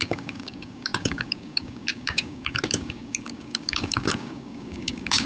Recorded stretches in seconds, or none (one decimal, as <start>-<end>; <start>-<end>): none